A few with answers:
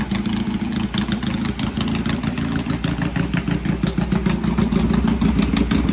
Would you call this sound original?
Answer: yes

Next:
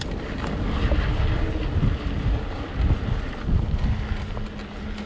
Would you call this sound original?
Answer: yes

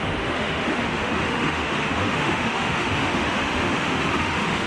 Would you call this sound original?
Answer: no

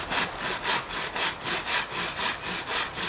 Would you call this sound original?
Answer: yes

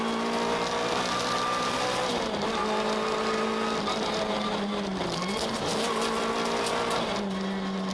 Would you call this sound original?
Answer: yes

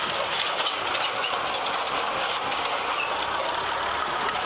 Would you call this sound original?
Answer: yes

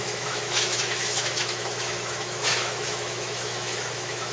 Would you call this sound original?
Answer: no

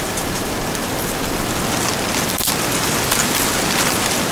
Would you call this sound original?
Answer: yes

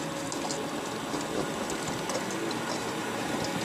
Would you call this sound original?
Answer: yes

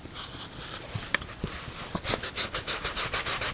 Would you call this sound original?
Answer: yes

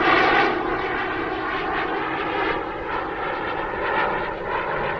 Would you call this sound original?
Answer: yes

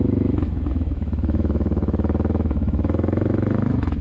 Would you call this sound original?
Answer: no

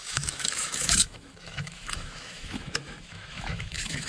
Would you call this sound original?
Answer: no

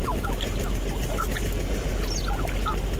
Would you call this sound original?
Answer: yes